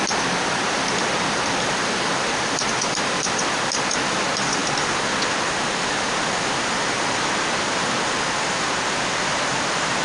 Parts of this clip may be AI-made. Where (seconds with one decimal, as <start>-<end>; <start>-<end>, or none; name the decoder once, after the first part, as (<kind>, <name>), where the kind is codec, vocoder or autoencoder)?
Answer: none